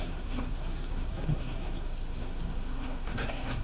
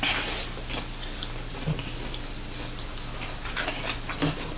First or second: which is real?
second